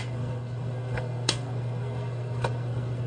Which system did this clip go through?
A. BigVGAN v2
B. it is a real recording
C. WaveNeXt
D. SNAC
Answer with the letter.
D